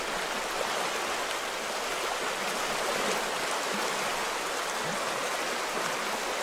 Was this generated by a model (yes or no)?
no